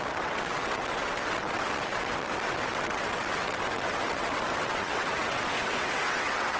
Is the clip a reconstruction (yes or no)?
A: yes